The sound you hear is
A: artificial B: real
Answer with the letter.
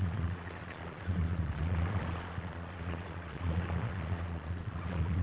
A